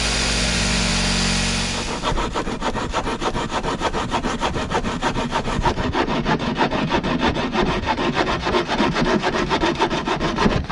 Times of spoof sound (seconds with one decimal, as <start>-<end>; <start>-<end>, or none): 0.0-0.9; 5.2-10.7